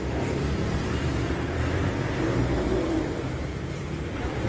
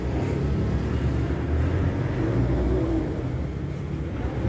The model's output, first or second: first